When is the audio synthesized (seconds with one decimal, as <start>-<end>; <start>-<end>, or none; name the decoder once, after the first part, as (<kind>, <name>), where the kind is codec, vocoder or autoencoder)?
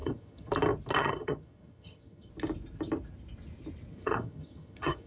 0.0-0.5 (vocoder, HiFi-GAN); 1.0-2.3; 3.9-5.1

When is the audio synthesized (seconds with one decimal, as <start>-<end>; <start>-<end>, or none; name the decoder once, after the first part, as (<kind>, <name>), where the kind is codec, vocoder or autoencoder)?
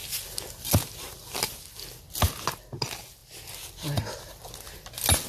none